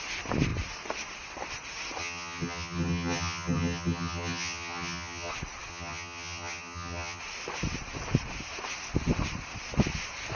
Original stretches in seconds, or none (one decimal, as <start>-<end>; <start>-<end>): 0.0-2.0; 5.3-5.7; 7.2-10.3